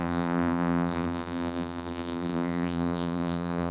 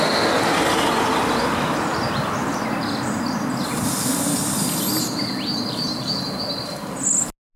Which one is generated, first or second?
first